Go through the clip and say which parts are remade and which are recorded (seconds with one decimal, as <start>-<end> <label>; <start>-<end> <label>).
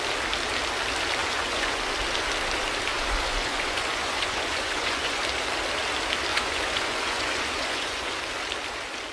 0.0-1.2 recorded; 1.2-1.8 remade; 1.8-2.9 recorded; 2.9-5.2 remade; 5.2-6.3 recorded; 6.3-8.2 remade; 8.2-9.1 recorded